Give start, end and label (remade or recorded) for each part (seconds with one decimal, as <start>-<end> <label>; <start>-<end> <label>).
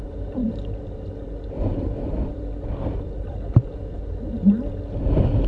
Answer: 0.0-0.4 recorded; 0.4-3.7 remade; 3.7-5.5 recorded